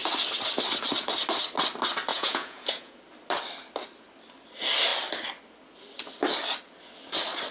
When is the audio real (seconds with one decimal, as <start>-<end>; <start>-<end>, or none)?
0.0-2.1; 3.0-7.5